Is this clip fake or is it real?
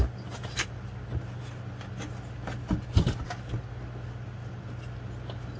real